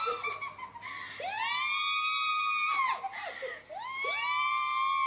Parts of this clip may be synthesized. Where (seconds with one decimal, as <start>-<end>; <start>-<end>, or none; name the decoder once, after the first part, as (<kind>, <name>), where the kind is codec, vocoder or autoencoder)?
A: none